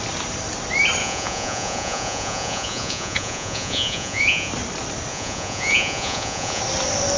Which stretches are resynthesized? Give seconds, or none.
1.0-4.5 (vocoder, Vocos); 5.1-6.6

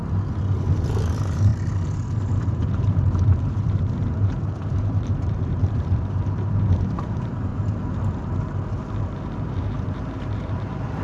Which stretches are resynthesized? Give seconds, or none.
1.1-1.5 (vocoder, BigVGAN v2); 2.2-7.5; 9.0-11.0

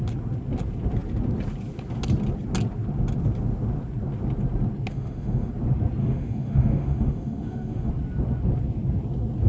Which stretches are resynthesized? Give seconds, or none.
4.9-5.5 (autoencoder, DAC-VAE); 6.0-7.9

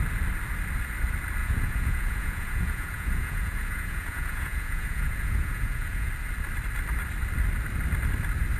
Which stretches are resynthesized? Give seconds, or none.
1.4-6.1 (vocoder, Vocos)

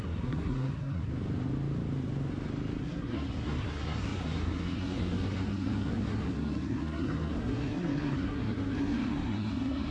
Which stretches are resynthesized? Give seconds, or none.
0.0-1.1 (codec, SNAC); 2.8-9.9

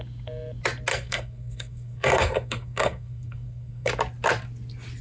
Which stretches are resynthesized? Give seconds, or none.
0.9-3.9 (codec, SNAC)